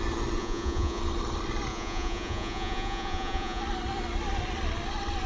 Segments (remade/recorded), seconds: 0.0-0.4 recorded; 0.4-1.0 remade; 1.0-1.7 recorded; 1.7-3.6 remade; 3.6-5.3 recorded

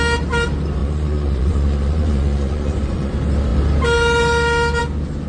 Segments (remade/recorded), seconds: 0.0-0.8 recorded; 0.8-3.1 remade; 3.1-5.3 recorded

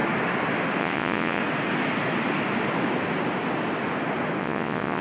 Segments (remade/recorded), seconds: 0.0-0.8 recorded; 0.8-1.4 remade; 1.4-4.4 recorded; 4.4-5.0 remade

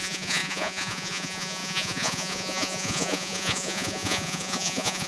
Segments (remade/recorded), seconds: 0.0-5.1 remade

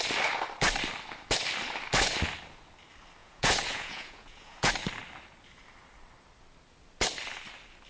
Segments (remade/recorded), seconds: 0.0-3.2 recorded; 3.2-4.7 remade; 4.7-7.9 recorded

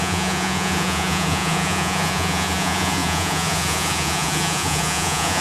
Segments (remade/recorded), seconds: 0.0-5.4 remade